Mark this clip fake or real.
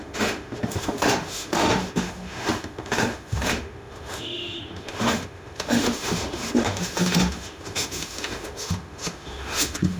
fake